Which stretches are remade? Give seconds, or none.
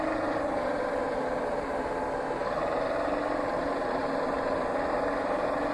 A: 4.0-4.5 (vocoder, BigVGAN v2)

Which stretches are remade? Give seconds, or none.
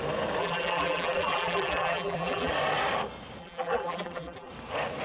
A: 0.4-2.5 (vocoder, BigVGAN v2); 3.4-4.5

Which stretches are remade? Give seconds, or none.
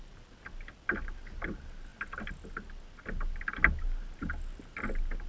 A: none